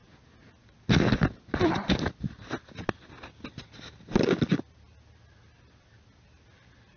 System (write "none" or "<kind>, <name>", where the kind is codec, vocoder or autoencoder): none